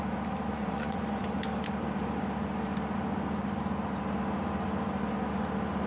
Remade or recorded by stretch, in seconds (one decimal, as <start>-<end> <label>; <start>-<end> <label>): 0.0-0.5 recorded; 0.5-1.2 remade; 1.2-5.9 recorded